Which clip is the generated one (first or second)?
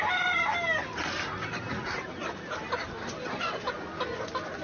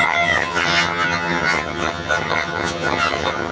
second